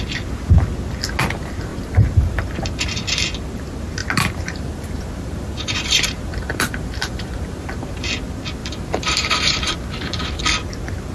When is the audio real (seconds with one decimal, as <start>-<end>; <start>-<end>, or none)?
0.0-1.7; 3.0-4.0; 8.1-8.6; 10.4-11.1